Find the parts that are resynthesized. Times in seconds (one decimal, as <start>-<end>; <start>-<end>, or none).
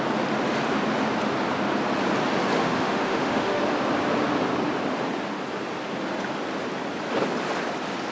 2.6-3.6